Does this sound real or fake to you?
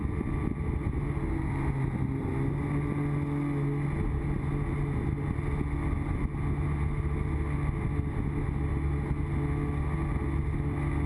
real